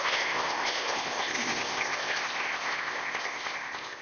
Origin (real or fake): fake